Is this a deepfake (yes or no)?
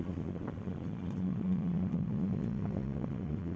yes